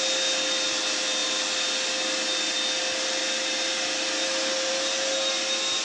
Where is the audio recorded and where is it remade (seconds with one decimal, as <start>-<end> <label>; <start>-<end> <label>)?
0.0-5.8 recorded